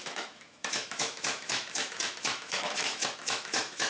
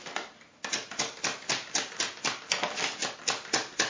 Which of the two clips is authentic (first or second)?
second